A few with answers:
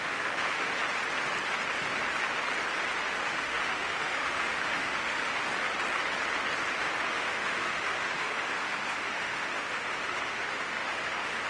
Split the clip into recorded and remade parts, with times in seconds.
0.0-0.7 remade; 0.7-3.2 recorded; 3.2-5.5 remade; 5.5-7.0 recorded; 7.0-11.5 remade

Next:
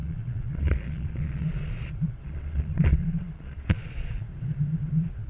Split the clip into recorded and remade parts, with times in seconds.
0.0-4.3 remade; 4.3-4.8 recorded; 4.8-5.3 remade

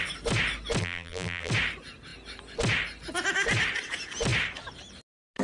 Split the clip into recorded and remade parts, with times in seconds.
0.0-0.8 recorded; 0.8-1.5 remade; 1.5-5.4 recorded

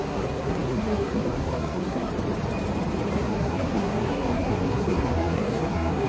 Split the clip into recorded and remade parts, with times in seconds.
0.0-2.1 remade; 2.1-3.1 recorded; 3.1-6.1 remade

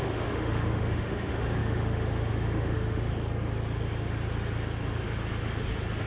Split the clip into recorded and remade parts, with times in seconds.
0.0-3.1 remade; 3.1-6.1 recorded

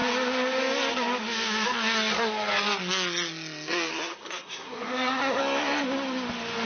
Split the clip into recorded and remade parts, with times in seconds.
0.0-3.9 recorded; 3.9-5.4 remade; 5.4-6.7 recorded

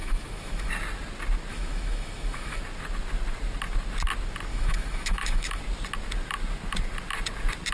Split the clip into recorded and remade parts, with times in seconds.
0.0-0.7 remade; 0.7-1.5 recorded; 1.5-2.6 remade; 2.6-4.5 recorded; 4.5-5.6 remade; 5.6-7.7 recorded

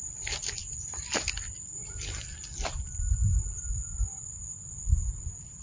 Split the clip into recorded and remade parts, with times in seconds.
0.0-5.6 recorded